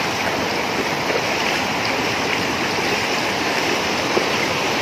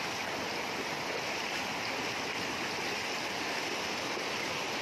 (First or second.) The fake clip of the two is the first